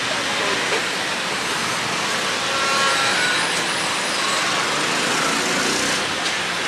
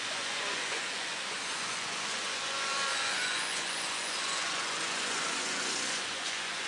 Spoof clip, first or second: second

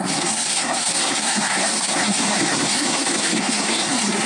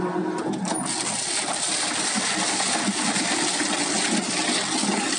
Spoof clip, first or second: first